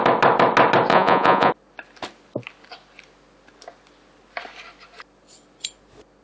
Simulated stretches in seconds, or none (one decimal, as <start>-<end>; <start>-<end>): 0.9-1.5